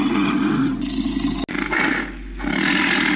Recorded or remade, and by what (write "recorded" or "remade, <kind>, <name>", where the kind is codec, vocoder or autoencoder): recorded